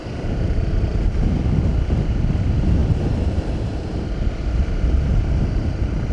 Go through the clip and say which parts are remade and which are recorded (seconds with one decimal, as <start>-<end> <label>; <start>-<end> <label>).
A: 0.0-6.1 remade